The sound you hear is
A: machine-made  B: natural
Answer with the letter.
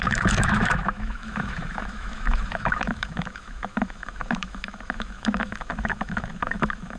A